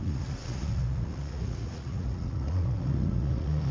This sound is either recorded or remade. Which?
remade